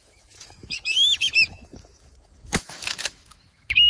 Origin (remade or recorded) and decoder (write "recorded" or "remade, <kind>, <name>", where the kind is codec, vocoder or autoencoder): remade, autoencoder, DAC-VAE